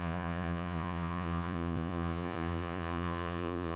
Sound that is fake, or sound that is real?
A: fake